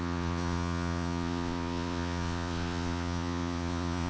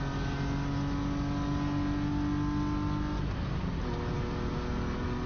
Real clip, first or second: second